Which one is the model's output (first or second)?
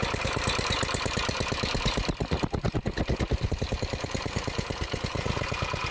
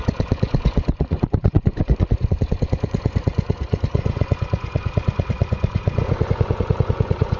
second